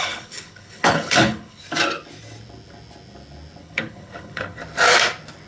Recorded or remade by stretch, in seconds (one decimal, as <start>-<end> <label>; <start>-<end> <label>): 0.0-1.6 remade; 1.6-3.6 recorded; 3.6-4.6 remade; 4.6-5.5 recorded